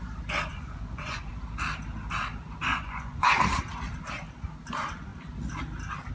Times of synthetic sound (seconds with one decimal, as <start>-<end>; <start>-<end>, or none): 0.5-1.3; 2.7-3.4